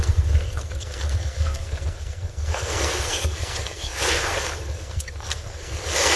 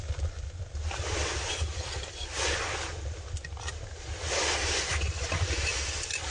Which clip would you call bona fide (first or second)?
second